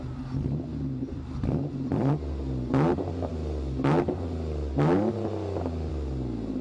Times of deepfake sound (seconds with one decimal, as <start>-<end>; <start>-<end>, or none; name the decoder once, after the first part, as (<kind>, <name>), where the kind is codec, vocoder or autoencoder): 0.7-2.1 (vocoder, BigVGAN v2)